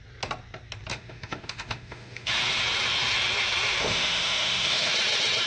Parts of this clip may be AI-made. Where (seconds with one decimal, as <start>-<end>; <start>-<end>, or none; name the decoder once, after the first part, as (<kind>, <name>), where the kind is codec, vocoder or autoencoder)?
0.9-2.3 (autoencoder, DAC-VAE); 3.8-4.9